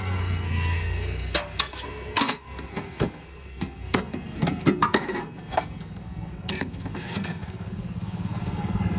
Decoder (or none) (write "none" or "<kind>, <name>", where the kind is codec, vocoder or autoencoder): codec, SNAC